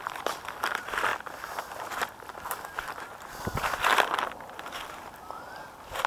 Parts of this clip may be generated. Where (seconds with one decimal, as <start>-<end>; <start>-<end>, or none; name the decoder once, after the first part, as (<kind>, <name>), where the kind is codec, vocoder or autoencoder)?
none